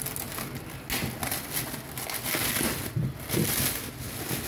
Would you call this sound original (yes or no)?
yes